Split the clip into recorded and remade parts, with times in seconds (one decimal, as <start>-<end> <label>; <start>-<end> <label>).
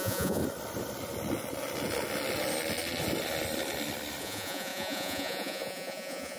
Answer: 0.0-0.4 remade; 0.4-4.2 recorded; 4.2-6.4 remade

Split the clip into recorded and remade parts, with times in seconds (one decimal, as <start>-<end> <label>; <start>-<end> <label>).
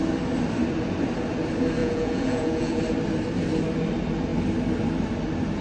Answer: 0.0-1.8 recorded; 1.8-2.8 remade; 2.8-5.6 recorded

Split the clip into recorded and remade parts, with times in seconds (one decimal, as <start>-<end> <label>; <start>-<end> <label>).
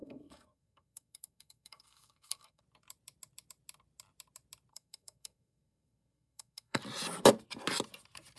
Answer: 0.0-2.6 remade; 2.6-4.7 recorded; 4.7-6.8 remade; 6.8-8.4 recorded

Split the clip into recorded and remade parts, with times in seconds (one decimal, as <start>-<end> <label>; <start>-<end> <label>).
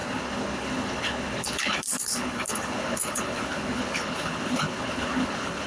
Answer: 0.0-5.7 remade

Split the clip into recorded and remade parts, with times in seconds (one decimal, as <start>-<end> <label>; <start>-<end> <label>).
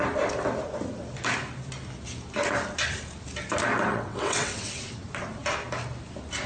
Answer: 0.0-3.9 recorded; 3.9-4.8 remade; 4.8-6.5 recorded